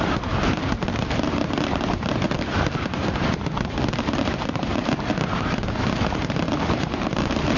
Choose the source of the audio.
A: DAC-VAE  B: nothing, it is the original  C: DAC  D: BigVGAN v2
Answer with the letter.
D